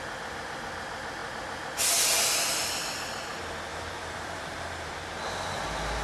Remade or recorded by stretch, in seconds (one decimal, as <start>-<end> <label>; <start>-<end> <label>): 0.0-3.7 recorded; 3.7-4.9 remade; 4.9-6.0 recorded